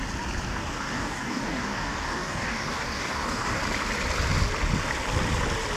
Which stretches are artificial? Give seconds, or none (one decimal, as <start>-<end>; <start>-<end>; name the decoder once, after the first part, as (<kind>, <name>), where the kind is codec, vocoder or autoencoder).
0.5-3.6 (codec, DAC)